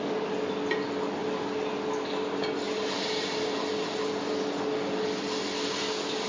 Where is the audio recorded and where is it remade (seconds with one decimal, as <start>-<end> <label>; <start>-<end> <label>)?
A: 0.0-6.3 recorded